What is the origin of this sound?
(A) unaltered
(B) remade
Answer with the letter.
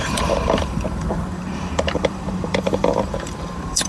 B